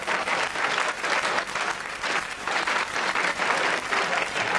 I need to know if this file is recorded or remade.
recorded